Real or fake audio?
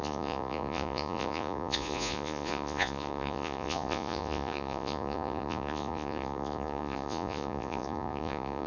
fake